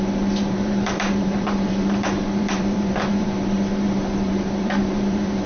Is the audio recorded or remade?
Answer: remade